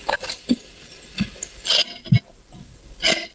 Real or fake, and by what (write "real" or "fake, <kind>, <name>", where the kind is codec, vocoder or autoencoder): real